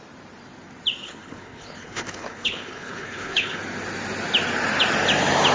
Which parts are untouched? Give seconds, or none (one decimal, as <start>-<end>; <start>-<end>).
0.0-1.0; 3.6-5.5